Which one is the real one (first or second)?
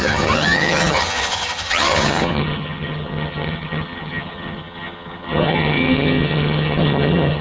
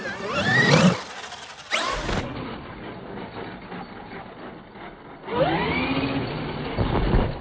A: second